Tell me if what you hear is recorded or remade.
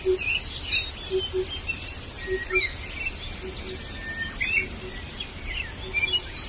recorded